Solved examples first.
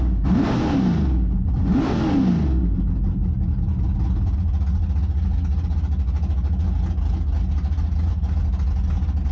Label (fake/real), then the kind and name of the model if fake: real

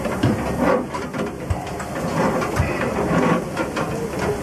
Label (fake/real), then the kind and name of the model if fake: fake, vocoder, BigVGAN v2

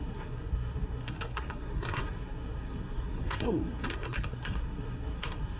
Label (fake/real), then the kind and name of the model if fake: fake, codec, SNAC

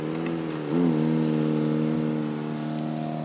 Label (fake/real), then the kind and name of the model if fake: real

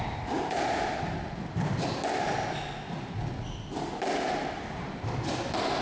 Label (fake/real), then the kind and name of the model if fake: real